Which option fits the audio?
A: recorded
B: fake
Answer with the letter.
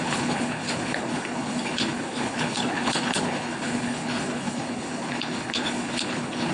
B